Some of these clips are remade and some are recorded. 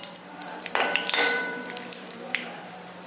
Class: remade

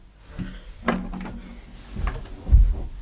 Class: recorded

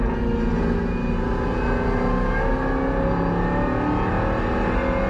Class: recorded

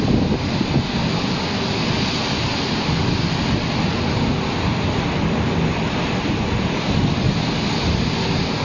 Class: recorded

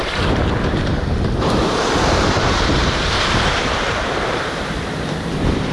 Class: remade